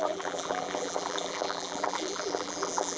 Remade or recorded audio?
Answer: remade